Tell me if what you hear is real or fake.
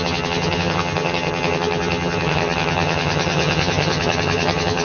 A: fake